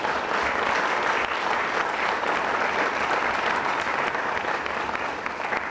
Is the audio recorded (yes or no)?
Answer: yes